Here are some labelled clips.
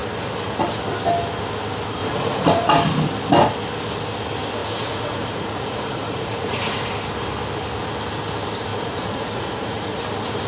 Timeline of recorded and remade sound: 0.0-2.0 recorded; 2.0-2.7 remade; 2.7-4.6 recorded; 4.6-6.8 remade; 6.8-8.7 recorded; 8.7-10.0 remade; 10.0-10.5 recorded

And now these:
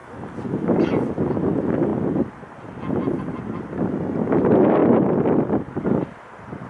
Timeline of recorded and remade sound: 0.0-6.7 recorded

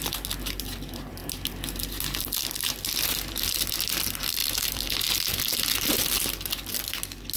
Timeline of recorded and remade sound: 0.0-7.4 recorded

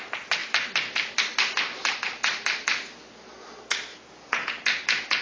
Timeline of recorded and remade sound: 0.0-3.9 recorded; 3.9-4.5 remade; 4.5-5.2 recorded

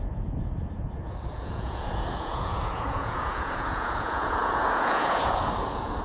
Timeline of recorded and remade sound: 0.0-6.0 remade

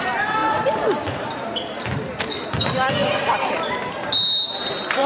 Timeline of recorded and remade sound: 0.0-5.1 recorded

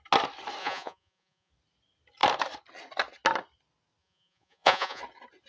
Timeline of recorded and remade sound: 0.0-0.6 recorded; 0.6-1.5 remade; 1.5-4.0 recorded; 4.0-5.0 remade; 5.0-5.5 recorded

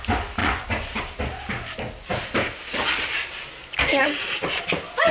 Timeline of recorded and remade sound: 0.0-0.4 recorded; 0.4-1.0 remade; 1.0-5.1 recorded